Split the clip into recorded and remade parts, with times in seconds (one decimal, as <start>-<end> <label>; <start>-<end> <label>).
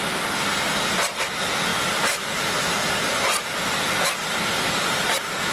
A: 0.0-1.7 recorded; 1.7-5.0 remade; 5.0-5.5 recorded